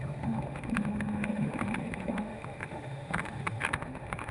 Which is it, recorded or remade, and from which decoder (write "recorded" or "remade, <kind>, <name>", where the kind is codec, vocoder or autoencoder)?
remade, autoencoder, DAC-VAE